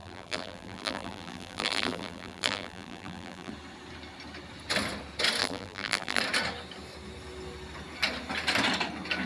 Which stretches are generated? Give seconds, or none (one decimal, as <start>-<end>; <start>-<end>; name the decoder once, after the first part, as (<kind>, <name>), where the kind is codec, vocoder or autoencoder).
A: 0.0-3.5 (vocoder, BigVGAN v2); 5.4-6.2